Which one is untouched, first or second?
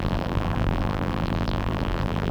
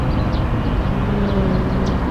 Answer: second